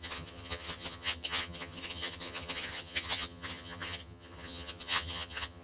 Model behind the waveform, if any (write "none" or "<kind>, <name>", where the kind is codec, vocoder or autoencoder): vocoder, HiFi-GAN